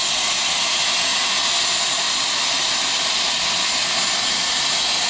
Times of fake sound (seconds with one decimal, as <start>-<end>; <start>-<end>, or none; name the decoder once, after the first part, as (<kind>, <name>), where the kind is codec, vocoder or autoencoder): none